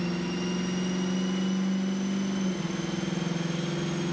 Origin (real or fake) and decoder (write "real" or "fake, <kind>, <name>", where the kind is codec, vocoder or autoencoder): real